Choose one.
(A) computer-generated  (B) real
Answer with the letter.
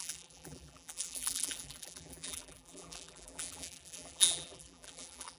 A